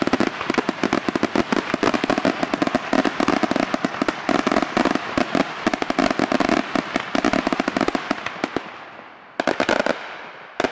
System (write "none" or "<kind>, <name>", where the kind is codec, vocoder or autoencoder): none